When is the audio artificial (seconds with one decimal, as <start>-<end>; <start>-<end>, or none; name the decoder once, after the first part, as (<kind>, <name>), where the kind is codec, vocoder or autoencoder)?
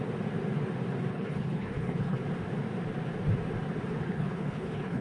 1.1-2.2 (codec, HILCodec); 3.9-5.0